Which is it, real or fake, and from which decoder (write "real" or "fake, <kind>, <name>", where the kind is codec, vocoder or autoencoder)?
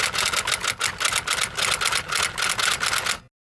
real